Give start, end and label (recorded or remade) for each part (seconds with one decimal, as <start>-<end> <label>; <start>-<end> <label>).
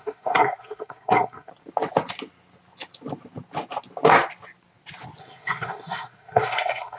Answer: 0.0-1.5 remade; 1.5-5.2 recorded; 5.2-7.0 remade